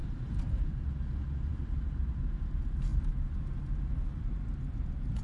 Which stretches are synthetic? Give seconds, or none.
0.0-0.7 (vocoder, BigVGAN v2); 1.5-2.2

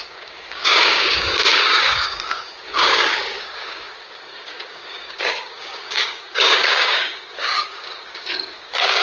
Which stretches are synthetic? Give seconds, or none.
0.0-9.0 (codec, DAC)

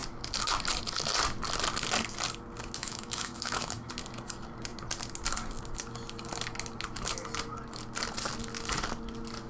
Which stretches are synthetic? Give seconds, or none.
2.8-3.9 (autoencoder, DAC-VAE)